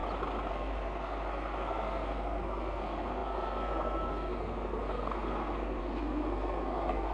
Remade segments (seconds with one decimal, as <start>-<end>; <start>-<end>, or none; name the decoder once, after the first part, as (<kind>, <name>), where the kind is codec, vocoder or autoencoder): 0.5-7.1 (codec, SNAC)